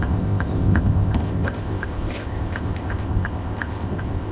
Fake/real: fake